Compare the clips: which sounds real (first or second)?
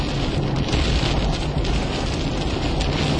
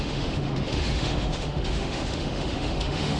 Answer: first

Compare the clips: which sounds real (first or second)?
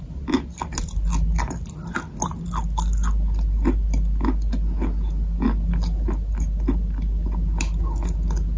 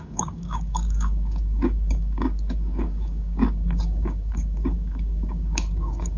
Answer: first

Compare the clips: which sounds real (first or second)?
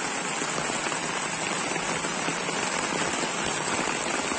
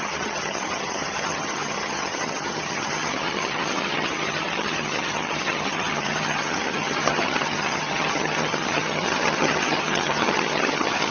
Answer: first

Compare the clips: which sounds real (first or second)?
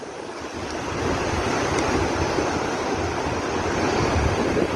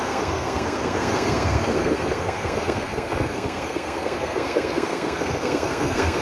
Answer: first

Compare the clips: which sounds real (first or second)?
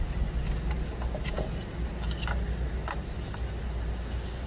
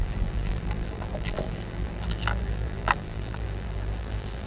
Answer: first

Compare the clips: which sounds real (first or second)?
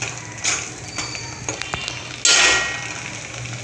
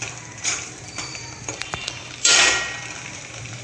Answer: first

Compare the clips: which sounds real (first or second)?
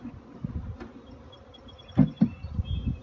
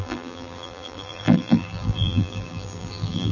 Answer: first